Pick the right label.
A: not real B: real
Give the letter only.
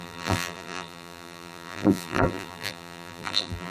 A